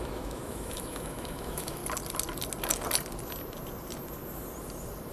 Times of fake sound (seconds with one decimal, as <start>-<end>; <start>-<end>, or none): 0.0-1.8